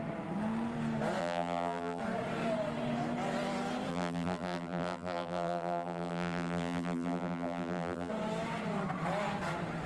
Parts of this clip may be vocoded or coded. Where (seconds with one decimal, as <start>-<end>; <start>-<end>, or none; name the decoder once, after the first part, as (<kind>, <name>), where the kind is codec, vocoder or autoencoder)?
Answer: 1.2-2.0 (vocoder, BigVGAN v2); 3.9-8.1